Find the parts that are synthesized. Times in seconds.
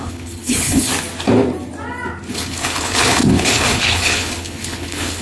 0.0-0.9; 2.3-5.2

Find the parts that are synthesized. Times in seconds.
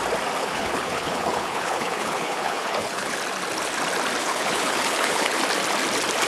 0.4-3.1; 4.2-5.4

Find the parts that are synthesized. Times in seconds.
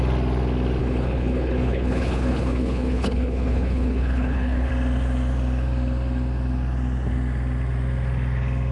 0.8-4.7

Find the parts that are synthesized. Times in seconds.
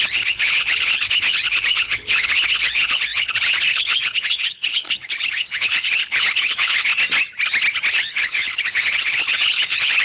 0.0-6.9; 7.9-10.0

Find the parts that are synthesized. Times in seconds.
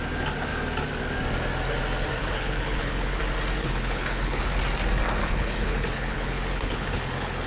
2.2-3.2; 3.6-4.4; 5.2-7.5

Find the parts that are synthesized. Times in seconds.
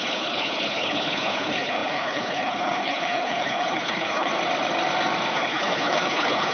0.0-4.3; 5.3-6.5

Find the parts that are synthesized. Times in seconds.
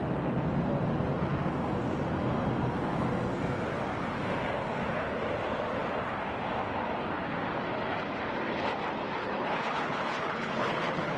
9.2-11.2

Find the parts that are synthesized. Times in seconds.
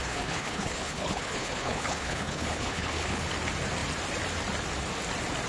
0.0-3.3